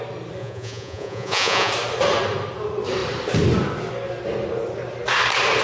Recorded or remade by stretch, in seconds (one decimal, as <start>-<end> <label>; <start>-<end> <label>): 0.0-0.4 recorded; 0.4-1.7 remade; 1.7-5.6 recorded